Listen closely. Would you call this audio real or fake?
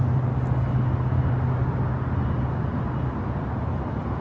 real